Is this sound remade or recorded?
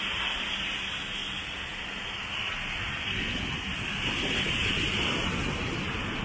recorded